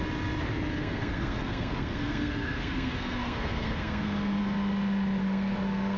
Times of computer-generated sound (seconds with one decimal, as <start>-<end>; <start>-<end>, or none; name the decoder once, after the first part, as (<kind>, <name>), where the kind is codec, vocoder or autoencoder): 0.8-4.4 (codec, SNAC); 5.2-6.0